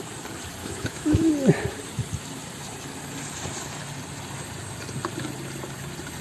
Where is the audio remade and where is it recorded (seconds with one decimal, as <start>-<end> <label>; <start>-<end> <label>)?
0.0-0.6 recorded; 0.6-1.3 remade; 1.3-6.2 recorded